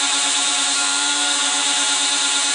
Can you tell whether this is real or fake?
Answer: fake